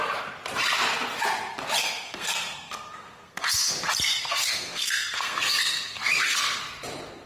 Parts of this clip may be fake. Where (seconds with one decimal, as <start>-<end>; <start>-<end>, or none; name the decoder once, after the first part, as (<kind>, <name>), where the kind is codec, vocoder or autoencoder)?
1.8-3.7 (codec, SNAC); 4.2-6.6